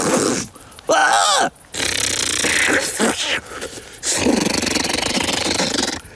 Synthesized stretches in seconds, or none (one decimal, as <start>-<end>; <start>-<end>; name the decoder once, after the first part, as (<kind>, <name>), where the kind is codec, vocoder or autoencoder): none